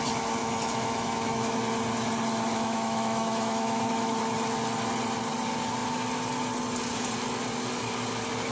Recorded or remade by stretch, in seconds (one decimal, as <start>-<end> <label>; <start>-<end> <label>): 0.0-0.4 recorded; 0.4-1.5 remade; 1.5-2.5 recorded; 2.5-4.2 remade; 4.2-8.5 recorded